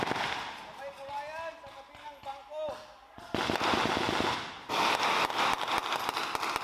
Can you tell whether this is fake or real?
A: real